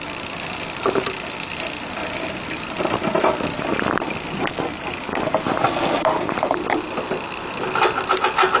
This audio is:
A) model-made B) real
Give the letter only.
B